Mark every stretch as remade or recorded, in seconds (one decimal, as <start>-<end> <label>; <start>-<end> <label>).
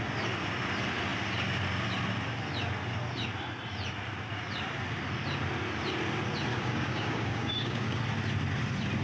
0.0-6.5 recorded; 6.5-8.0 remade; 8.0-9.0 recorded